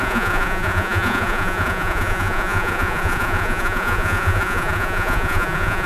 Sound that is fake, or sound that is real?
fake